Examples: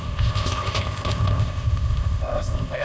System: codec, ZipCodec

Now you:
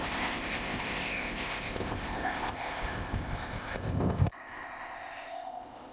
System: codec, ZipCodec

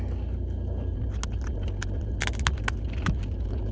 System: none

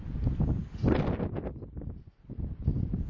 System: none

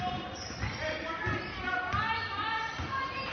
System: none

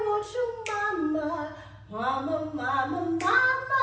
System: none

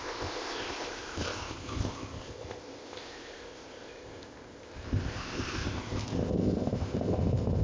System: codec, ZipCodec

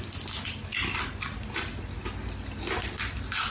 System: none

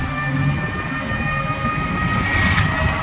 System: none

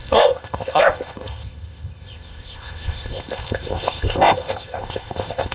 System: codec, ZipCodec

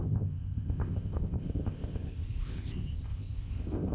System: codec, ZipCodec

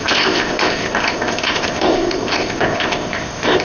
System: codec, ZipCodec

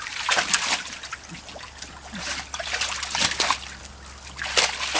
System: none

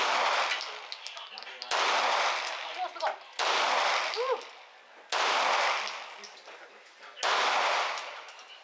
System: none